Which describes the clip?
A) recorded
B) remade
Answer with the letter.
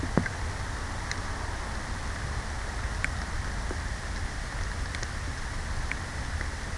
A